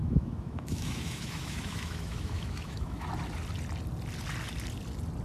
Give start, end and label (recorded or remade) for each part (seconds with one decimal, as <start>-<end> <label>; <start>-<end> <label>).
0.0-3.1 remade; 3.1-5.2 recorded